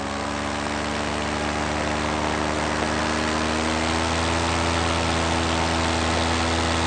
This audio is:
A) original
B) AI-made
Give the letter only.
A